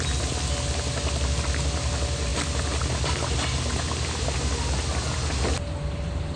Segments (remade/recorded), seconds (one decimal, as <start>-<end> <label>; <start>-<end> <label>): 0.0-6.4 recorded